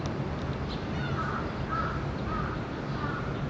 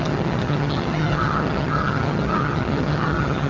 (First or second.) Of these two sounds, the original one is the first